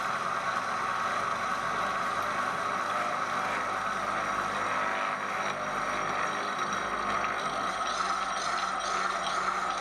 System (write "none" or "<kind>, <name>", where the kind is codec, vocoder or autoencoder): none